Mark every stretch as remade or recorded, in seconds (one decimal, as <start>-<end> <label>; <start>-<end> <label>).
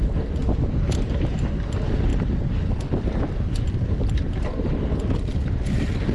0.0-6.1 remade